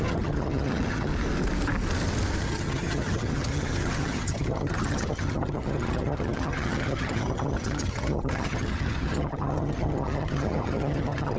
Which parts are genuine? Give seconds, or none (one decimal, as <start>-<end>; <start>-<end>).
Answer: 1.1-2.4